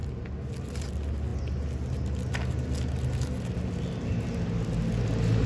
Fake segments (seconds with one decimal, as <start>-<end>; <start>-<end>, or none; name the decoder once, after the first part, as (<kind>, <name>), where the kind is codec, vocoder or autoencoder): none